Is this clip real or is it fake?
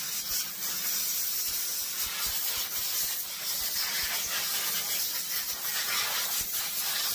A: real